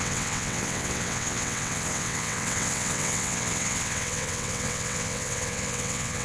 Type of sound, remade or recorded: remade